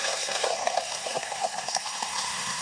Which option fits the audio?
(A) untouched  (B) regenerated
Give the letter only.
B